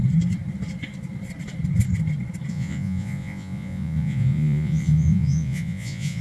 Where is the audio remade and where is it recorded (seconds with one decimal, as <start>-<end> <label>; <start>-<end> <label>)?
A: 0.0-2.5 recorded; 2.5-6.2 remade